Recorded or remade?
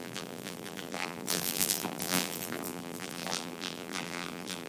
remade